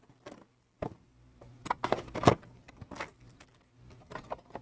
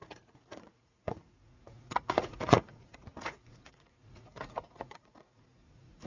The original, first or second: first